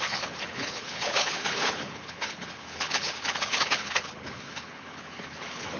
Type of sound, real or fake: fake